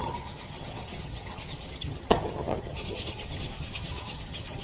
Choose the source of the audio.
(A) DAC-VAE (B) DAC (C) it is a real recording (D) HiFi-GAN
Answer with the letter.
D